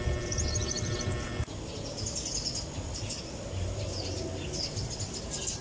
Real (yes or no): yes